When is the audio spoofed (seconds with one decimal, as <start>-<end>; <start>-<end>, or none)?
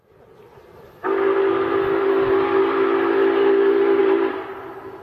none